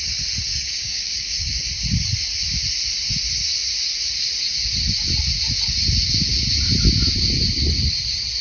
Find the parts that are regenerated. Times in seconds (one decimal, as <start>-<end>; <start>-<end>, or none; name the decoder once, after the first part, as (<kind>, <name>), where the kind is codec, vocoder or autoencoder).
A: 0.5-1.7 (codec, DAC)